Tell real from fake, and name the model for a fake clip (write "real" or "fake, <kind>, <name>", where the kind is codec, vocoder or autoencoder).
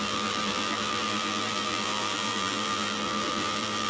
fake, vocoder, BigVGAN v2